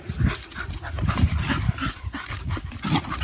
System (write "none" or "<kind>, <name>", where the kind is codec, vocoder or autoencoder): none